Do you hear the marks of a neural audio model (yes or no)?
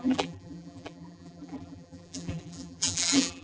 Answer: yes